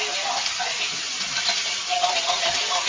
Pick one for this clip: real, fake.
real